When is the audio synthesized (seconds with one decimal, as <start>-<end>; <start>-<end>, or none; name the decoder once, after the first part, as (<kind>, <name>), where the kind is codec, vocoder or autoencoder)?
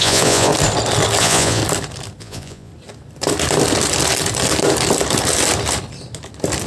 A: 0.0-0.5 (vocoder, Vocos); 1.2-1.6; 2.2-2.7